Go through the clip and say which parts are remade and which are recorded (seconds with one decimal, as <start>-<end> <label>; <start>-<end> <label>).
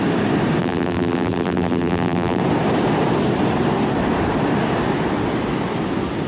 0.0-0.6 recorded; 0.6-2.4 remade; 2.4-6.3 recorded